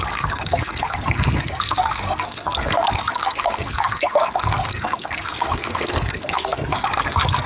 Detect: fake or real fake